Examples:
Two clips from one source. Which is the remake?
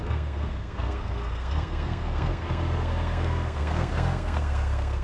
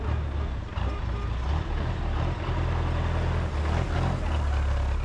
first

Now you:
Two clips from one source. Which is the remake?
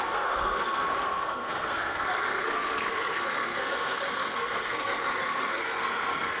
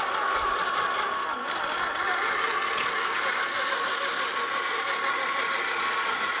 first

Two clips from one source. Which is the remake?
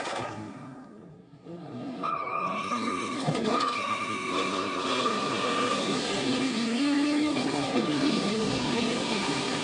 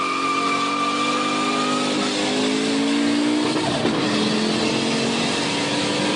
first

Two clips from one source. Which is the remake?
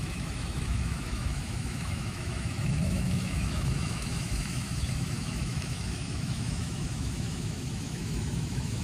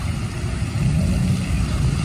first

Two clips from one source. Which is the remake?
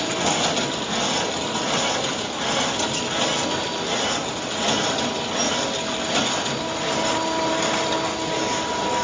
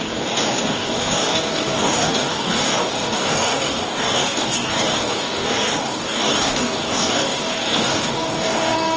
second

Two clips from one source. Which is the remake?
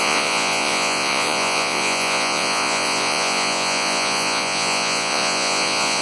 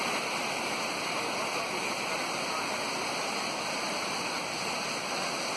first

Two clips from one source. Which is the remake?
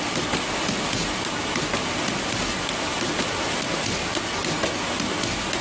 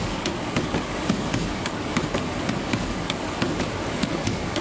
second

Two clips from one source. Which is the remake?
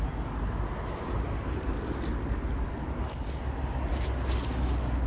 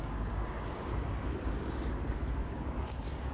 second